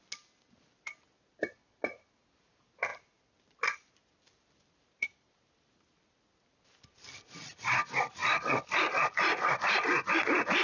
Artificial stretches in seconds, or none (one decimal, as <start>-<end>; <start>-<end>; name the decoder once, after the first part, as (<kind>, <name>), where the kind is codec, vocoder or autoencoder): 8.2-10.1 (vocoder, BigVGAN v2)